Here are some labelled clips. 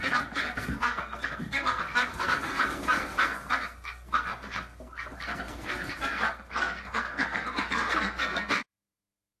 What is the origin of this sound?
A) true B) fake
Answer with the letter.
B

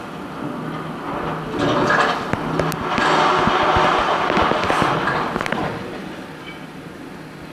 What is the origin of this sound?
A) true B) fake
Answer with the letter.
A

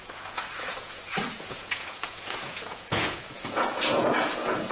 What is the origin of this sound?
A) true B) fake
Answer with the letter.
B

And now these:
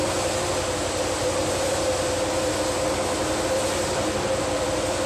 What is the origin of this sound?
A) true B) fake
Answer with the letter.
A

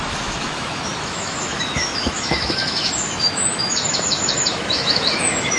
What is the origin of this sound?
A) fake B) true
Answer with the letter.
A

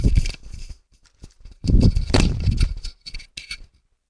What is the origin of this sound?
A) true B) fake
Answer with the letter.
A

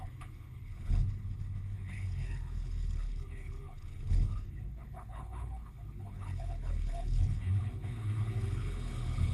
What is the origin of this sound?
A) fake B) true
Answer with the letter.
A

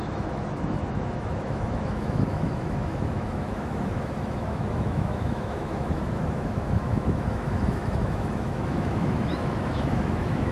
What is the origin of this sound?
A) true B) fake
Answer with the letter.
B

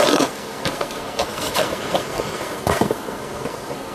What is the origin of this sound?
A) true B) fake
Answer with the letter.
B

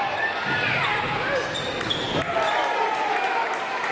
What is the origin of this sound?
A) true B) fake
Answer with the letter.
A